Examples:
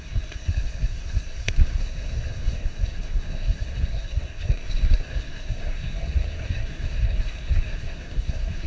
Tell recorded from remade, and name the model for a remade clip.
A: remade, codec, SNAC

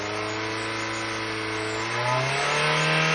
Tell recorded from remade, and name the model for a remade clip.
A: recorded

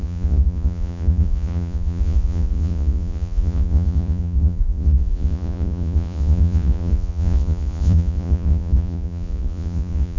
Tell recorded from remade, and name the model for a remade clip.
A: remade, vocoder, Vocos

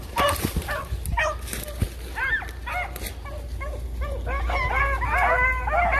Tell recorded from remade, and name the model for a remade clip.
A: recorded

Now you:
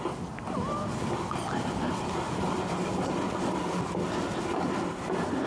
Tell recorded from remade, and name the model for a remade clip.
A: remade, vocoder, BigVGAN v2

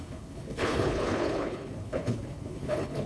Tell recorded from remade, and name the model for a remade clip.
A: remade, codec, HILCodec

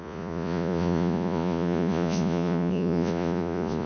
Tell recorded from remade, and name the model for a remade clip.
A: remade, vocoder, Vocos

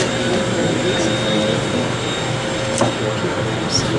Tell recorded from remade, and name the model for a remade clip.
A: recorded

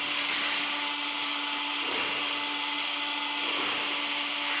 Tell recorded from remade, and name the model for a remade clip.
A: recorded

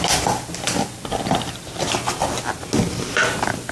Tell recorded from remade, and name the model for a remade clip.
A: recorded